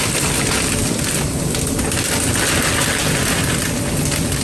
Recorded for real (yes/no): yes